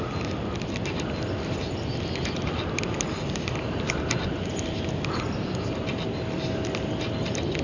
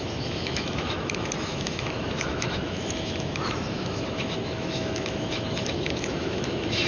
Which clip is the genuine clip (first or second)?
first